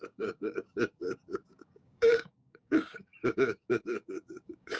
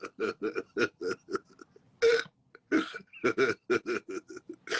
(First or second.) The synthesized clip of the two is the first